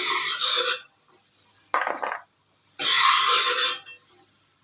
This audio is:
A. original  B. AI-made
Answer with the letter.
A